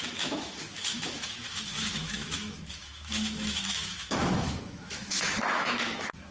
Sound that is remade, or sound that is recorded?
remade